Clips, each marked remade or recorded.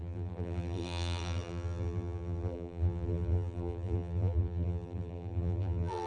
remade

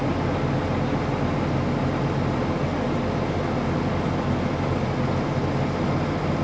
recorded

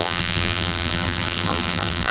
remade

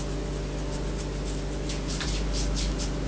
recorded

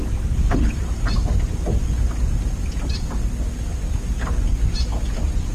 recorded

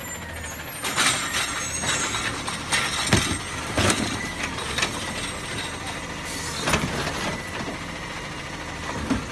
recorded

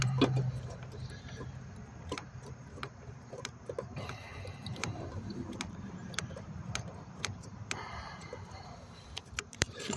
remade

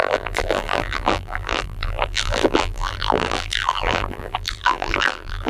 remade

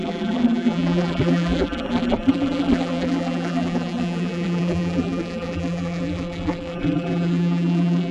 remade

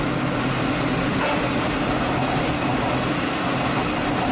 remade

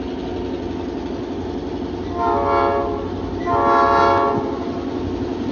recorded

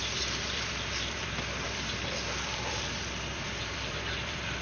remade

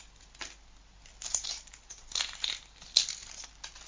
recorded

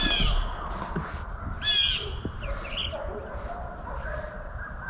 recorded